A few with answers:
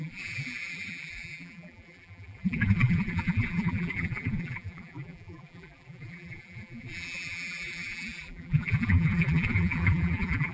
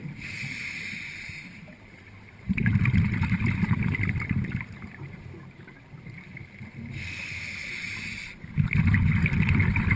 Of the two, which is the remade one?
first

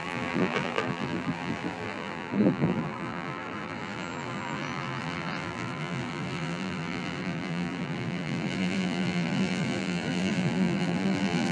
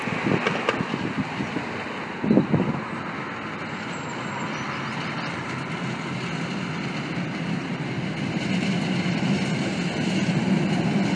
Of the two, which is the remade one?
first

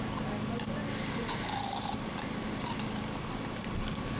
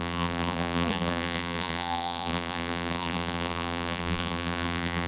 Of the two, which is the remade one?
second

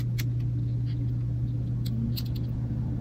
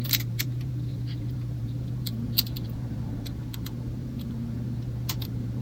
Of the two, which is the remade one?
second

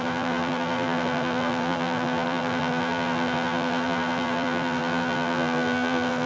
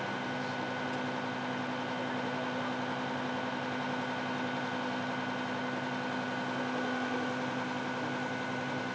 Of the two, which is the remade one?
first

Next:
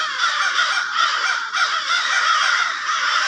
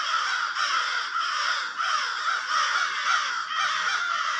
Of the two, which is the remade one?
first